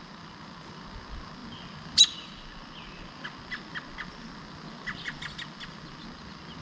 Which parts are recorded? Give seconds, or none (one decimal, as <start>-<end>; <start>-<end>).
0.0-6.6